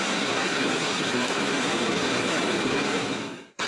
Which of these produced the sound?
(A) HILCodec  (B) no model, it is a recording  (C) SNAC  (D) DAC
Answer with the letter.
C